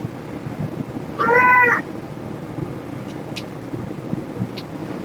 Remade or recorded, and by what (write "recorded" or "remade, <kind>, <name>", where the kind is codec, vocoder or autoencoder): recorded